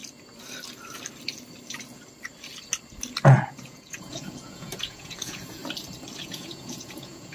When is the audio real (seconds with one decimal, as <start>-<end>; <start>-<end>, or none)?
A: 0.0-3.5; 5.6-6.2